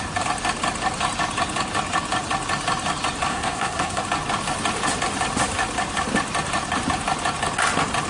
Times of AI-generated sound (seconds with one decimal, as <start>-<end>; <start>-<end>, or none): 3.3-4.0